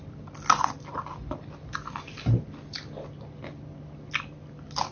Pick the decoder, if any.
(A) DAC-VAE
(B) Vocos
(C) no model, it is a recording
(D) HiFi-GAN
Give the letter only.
C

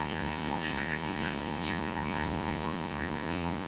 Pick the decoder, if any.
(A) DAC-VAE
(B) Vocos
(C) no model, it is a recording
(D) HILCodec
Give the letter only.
B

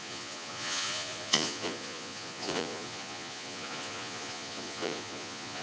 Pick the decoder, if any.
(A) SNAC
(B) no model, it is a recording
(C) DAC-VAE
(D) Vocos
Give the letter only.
D